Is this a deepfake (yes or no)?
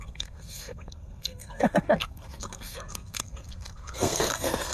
yes